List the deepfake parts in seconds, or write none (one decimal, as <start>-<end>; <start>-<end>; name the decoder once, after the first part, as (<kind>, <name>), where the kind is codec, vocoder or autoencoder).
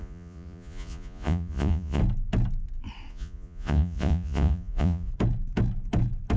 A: 0.0-2.0 (vocoder, Vocos); 3.1-5.1